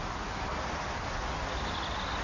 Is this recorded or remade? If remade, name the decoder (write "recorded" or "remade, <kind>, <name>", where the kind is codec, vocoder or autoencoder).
recorded